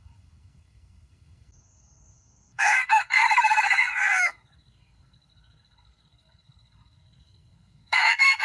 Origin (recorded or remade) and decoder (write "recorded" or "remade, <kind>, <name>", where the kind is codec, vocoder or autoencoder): remade, codec, SNAC